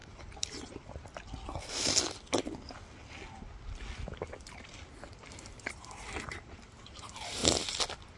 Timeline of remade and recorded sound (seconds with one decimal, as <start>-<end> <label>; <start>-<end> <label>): 0.0-4.5 recorded; 4.5-7.4 remade; 7.4-8.2 recorded